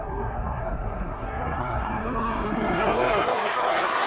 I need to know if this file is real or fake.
fake